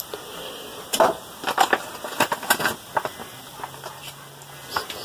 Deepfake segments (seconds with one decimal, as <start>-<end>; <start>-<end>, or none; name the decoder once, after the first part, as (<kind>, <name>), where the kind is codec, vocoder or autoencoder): none